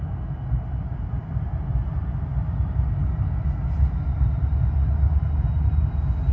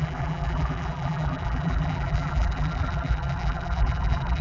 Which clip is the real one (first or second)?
first